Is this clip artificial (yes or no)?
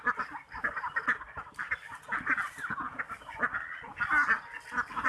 no